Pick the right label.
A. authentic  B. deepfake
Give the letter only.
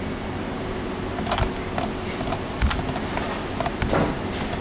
A